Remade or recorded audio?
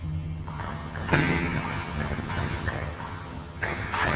remade